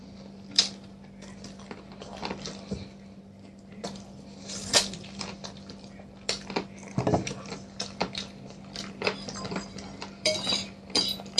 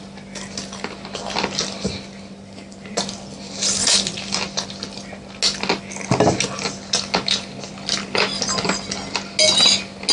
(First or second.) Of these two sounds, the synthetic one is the first